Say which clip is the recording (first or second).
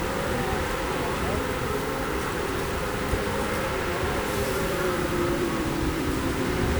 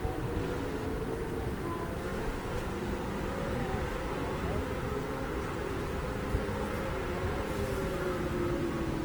second